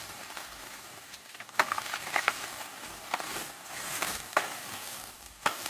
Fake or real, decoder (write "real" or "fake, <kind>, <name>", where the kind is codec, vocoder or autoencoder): fake, codec, DAC